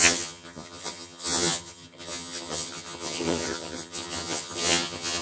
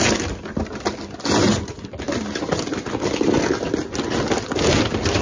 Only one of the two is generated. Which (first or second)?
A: first